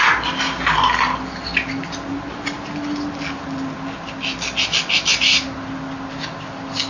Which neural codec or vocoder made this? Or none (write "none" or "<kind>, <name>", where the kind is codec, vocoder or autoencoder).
none